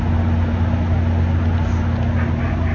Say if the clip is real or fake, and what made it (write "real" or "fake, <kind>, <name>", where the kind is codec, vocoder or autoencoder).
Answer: real